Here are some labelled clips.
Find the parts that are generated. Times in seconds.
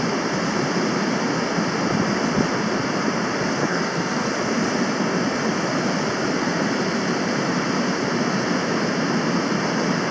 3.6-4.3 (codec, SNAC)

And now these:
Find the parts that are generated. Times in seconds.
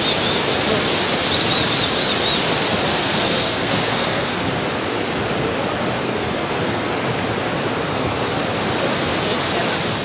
2.9-4.5 (codec, SNAC); 6.0-6.9; 7.9-8.4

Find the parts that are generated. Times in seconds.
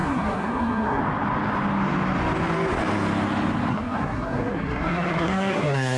0.0-1.0 (codec, SNAC); 3.7-6.0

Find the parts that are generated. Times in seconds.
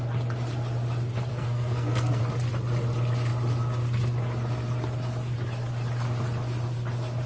1.3-2.2 (codec, SNAC)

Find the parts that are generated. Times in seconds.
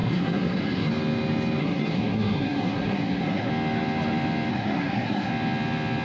0.0-0.9 (codec, SNAC); 1.6-3.5; 4.5-5.3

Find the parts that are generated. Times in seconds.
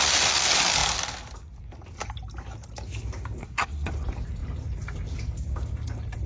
3.4-3.9 (codec, SNAC)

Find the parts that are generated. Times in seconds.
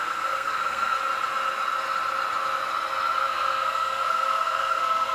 0.0-1.0 (codec, SNAC); 3.2-5.1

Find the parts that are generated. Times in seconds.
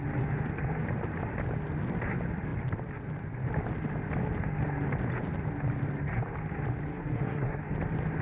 6.9-7.6 (codec, SNAC)